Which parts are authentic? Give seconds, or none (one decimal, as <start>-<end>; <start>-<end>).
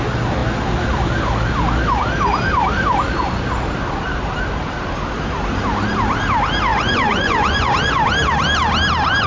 0.0-6.7; 7.7-9.3